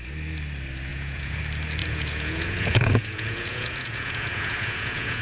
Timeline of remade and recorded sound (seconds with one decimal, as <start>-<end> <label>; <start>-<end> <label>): 0.0-0.9 recorded; 0.9-1.4 remade; 1.4-1.8 recorded; 1.8-5.2 remade

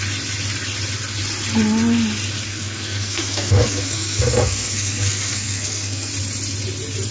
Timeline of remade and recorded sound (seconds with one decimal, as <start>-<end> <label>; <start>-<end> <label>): 0.0-2.5 recorded; 2.5-6.1 remade; 6.1-7.1 recorded

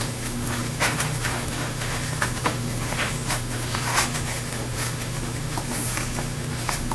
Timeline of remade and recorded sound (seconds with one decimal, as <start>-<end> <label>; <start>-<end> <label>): 0.0-6.9 remade

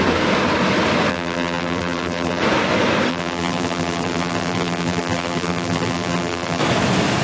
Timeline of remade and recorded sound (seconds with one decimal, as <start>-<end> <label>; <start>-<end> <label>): 0.0-1.1 recorded; 1.1-2.4 remade; 2.4-3.1 recorded; 3.1-6.6 remade; 6.6-7.2 recorded